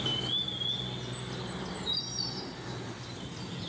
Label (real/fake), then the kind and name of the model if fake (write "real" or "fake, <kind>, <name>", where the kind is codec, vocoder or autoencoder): real